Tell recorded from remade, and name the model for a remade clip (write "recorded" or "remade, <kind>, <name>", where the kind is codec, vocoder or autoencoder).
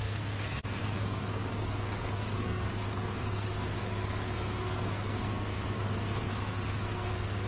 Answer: remade, codec, SNAC